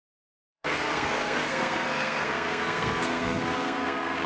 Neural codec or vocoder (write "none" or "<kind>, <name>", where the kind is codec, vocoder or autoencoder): codec, SNAC